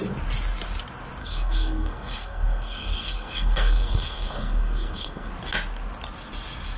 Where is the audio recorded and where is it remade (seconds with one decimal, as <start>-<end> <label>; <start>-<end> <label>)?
0.0-1.2 recorded; 1.2-5.3 remade; 5.3-6.8 recorded